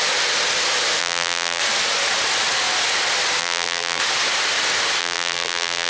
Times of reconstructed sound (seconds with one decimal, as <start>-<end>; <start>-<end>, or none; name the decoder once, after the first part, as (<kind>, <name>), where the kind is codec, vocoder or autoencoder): 1.0-1.6 (vocoder, BigVGAN v2); 3.4-4.0; 5.0-5.9